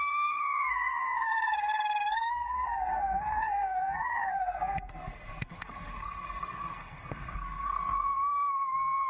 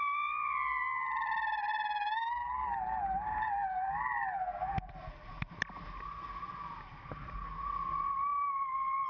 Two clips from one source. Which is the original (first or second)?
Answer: second